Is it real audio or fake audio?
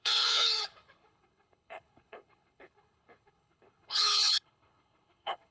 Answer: fake